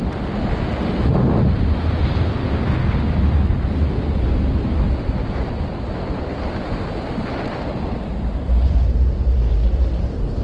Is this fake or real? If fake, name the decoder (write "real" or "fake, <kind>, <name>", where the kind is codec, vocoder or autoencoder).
real